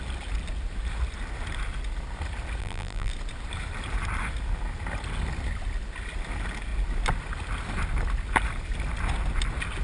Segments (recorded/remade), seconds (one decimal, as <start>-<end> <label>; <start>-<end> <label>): 0.0-2.6 recorded; 2.6-3.1 remade; 3.1-9.8 recorded